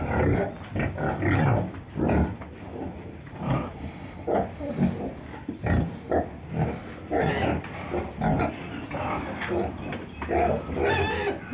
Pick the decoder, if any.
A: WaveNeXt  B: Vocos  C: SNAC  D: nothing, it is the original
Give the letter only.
D